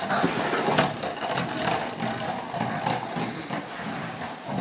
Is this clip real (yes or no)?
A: yes